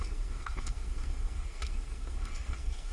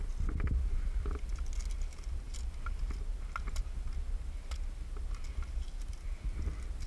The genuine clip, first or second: second